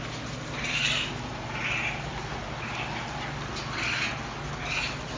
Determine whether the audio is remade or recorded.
recorded